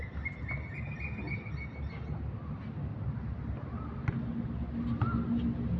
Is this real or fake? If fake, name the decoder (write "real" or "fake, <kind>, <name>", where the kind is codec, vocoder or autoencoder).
real